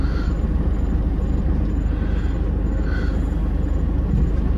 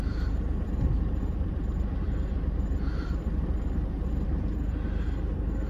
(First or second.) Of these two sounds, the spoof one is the second